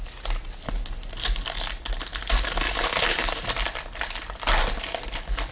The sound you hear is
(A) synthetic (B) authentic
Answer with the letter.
B